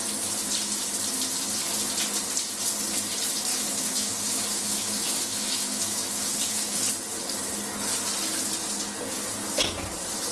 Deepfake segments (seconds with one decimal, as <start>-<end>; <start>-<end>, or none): 3.5-6.8